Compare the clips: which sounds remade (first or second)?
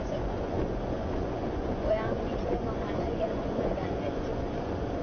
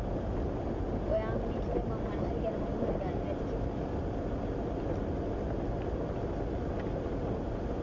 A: first